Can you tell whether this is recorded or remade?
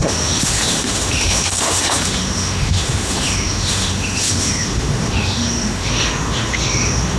remade